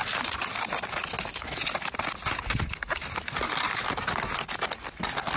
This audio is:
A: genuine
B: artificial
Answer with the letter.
A